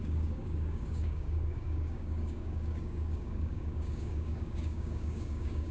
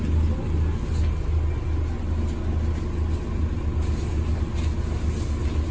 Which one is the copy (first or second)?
first